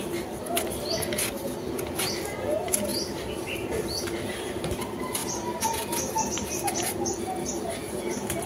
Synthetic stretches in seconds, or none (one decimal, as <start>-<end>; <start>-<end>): 2.9-4.0; 5.2-7.2